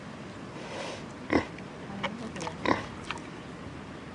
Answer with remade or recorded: recorded